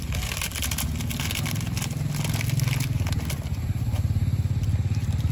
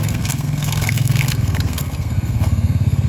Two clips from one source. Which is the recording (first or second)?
first